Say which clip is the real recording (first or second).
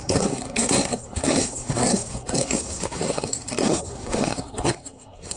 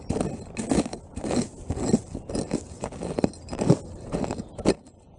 second